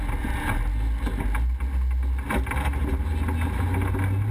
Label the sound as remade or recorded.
recorded